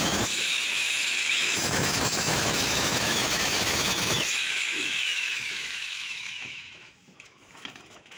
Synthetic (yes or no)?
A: yes